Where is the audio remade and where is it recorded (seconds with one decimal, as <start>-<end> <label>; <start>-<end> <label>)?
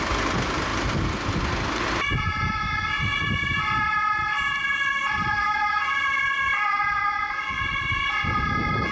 0.0-4.7 recorded; 4.7-8.5 remade; 8.5-8.9 recorded